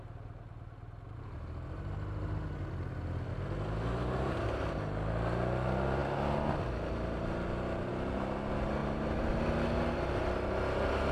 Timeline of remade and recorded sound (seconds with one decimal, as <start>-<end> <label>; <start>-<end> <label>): 0.0-11.1 recorded